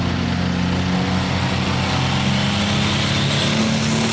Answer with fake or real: real